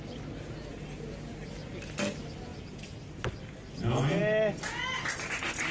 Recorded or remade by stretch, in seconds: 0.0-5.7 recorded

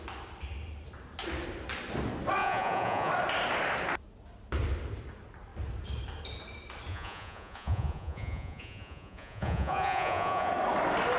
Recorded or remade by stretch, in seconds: 0.0-2.4 recorded; 2.4-3.1 remade; 3.1-6.9 recorded; 6.9-10.5 remade; 10.5-11.2 recorded

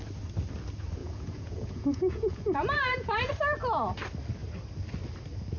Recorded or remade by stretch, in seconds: 0.0-1.0 recorded; 1.0-3.3 remade; 3.3-5.6 recorded

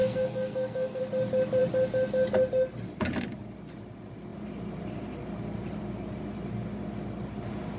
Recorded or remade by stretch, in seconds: 0.0-1.0 remade; 1.0-7.8 recorded

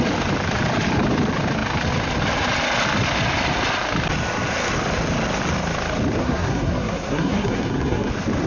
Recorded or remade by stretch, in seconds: 0.0-6.2 recorded; 6.2-8.1 remade; 8.1-8.5 recorded

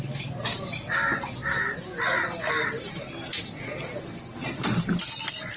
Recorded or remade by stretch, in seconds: 0.0-5.6 recorded